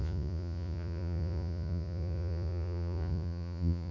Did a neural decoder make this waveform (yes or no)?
yes